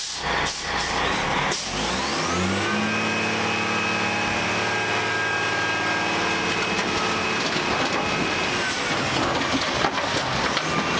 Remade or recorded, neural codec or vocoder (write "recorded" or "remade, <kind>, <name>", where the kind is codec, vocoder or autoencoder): recorded